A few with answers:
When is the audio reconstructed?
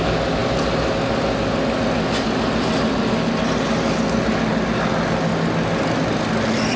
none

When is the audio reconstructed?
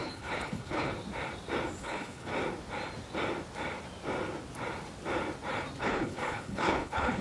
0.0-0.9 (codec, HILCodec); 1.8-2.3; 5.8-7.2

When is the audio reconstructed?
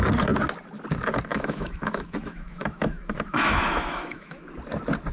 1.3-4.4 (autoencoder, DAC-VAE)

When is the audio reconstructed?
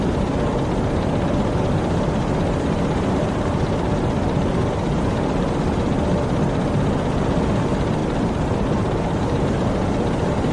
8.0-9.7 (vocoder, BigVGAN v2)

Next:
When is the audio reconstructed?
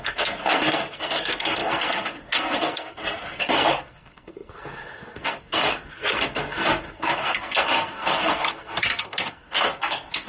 0.0-10.3 (codec, SNAC)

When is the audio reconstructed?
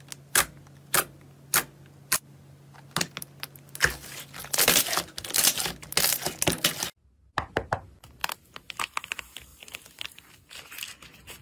9.5-10.7 (vocoder, BigVGAN v2)